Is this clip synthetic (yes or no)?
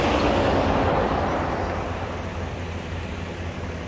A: no